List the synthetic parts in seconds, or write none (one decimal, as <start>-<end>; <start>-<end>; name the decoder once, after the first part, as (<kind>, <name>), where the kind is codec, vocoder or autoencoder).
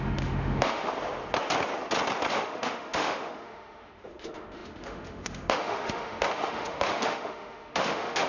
0.0-0.9 (autoencoder, DAC-VAE); 2.3-8.3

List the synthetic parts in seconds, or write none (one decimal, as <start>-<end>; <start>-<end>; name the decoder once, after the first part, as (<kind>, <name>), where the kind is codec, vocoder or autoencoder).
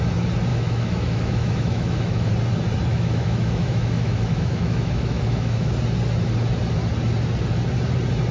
0.5-2.3 (autoencoder, DAC-VAE); 2.9-5.7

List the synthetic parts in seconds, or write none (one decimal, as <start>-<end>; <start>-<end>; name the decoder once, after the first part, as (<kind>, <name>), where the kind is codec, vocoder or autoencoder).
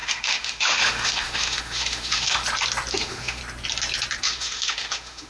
0.0-2.4 (autoencoder, DAC-VAE); 2.9-3.4; 4.2-5.3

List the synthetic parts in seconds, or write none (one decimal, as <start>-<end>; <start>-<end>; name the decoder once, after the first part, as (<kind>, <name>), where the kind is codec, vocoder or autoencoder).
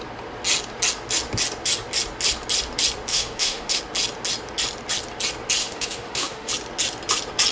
3.1-3.8 (autoencoder, DAC-VAE); 5.6-6.5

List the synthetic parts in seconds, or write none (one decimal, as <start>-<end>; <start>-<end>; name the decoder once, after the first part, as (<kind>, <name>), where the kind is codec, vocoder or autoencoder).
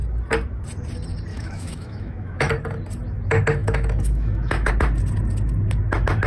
1.3-2.5 (autoencoder, DAC-VAE); 3.6-4.7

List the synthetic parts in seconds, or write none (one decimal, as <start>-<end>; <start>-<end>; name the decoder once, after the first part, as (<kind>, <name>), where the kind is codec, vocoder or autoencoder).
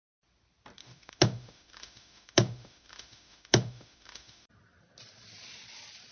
0.8-4.5 (autoencoder, DAC-VAE)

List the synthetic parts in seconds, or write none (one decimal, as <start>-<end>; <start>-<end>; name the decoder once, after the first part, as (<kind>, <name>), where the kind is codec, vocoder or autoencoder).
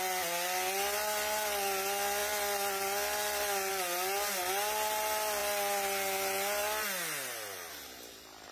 none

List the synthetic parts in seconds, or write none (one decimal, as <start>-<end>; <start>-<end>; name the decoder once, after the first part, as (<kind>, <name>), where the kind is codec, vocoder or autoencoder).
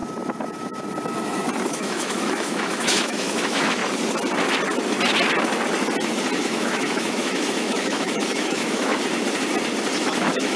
1.7-3.8 (autoencoder, DAC-VAE); 6.4-8.9; 10.0-10.6